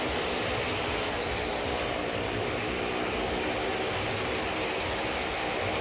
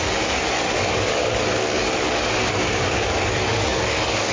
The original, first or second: first